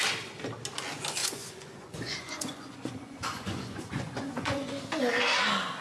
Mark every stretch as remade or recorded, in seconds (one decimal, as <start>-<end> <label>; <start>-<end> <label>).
0.0-1.2 recorded; 1.2-4.7 remade; 4.7-5.8 recorded